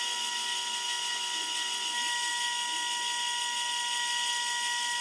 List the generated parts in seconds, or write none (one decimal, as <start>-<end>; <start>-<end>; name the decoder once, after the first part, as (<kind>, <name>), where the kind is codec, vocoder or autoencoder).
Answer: none